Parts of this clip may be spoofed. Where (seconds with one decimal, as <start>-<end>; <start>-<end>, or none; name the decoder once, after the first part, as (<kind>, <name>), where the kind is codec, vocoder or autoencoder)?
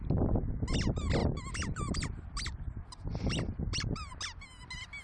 1.2-4.1 (vocoder, BigVGAN v2)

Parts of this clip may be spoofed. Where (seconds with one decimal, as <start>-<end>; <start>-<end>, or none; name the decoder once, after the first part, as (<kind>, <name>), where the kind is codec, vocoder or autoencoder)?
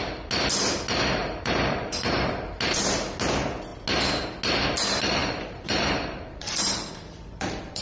1.2-2.2 (vocoder, BigVGAN v2); 5.2-7.8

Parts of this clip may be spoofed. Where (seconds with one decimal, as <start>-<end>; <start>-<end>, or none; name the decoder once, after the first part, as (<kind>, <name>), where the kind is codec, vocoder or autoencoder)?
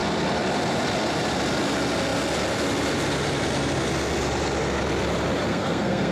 5.5-6.1 (codec, SNAC)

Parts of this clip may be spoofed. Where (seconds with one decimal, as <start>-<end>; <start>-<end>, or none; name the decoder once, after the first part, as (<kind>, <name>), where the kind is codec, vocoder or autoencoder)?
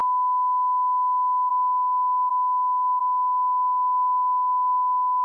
1.5-5.2 (codec, SNAC)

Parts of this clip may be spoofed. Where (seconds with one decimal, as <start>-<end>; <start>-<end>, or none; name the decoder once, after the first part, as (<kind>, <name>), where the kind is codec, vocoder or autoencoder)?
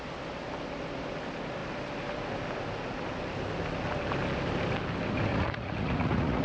5.3-6.4 (vocoder, Vocos)